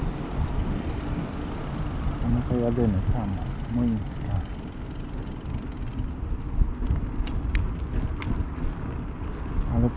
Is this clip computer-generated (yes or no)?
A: no